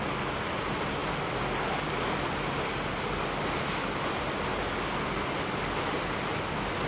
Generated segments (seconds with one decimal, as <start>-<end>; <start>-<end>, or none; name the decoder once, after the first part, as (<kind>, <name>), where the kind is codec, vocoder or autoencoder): none